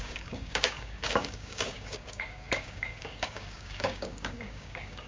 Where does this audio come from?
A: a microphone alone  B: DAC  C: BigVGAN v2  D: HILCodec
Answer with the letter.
B